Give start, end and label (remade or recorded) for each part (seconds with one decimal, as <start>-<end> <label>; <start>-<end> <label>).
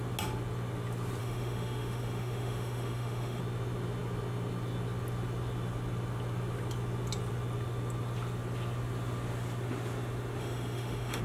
0.0-1.2 recorded; 1.2-3.4 remade; 3.4-10.4 recorded; 10.4-11.2 remade